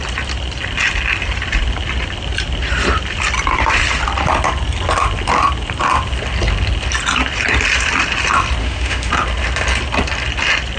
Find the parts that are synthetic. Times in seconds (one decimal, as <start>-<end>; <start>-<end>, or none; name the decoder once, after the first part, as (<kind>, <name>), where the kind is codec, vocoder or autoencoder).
8.6-9.1 (autoencoder, DAC-VAE)